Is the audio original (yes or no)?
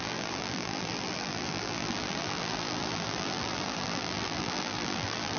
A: no